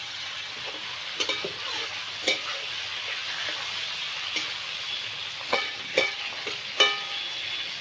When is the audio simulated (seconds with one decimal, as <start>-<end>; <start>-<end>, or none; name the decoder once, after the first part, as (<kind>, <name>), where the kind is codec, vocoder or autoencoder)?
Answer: 0.0-0.5 (vocoder, HiFi-GAN); 5.5-6.2